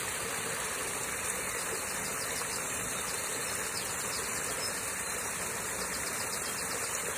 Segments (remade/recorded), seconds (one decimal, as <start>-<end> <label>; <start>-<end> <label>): 0.0-3.3 remade; 3.3-4.9 recorded; 4.9-7.2 remade